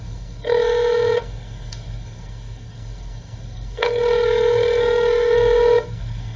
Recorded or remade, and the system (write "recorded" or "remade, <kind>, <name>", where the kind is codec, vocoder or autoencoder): remade, codec, SNAC